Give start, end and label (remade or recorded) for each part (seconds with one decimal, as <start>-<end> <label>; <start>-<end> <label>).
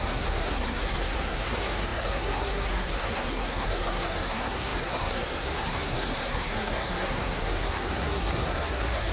0.0-9.1 remade